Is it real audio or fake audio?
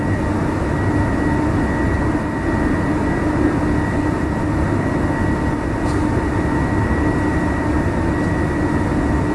real